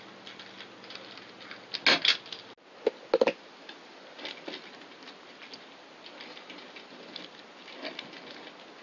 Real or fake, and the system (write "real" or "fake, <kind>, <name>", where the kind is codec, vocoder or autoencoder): real